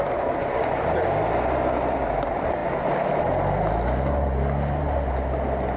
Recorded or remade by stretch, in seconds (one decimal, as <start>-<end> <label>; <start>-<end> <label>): 0.0-0.4 recorded; 0.4-0.9 remade; 0.9-5.8 recorded